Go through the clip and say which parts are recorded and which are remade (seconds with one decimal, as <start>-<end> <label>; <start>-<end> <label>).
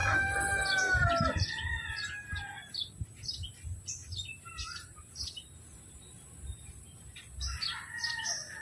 0.0-4.3 recorded; 4.3-6.1 remade; 6.1-6.5 recorded; 6.5-7.2 remade; 7.2-8.6 recorded